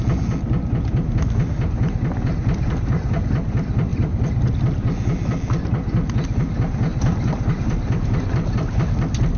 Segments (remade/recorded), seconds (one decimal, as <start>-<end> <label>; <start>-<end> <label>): 0.0-3.9 recorded; 3.9-4.5 remade; 4.5-6.9 recorded; 6.9-7.5 remade; 7.5-9.4 recorded